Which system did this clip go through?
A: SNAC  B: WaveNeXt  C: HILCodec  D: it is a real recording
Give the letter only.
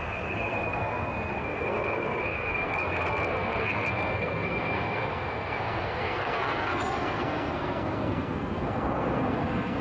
A